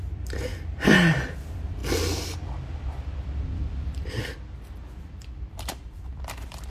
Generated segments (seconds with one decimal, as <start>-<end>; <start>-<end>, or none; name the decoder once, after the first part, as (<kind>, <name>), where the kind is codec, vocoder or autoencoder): 0.0-0.5 (vocoder, BigVGAN v2); 1.1-1.8; 5.0-6.7